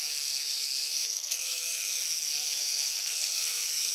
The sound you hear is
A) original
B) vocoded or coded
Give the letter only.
B